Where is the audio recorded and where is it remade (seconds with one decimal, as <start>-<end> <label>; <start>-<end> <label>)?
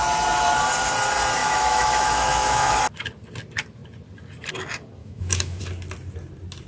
0.0-1.4 recorded; 1.4-2.8 remade; 2.8-5.0 recorded; 5.0-5.6 remade; 5.6-6.7 recorded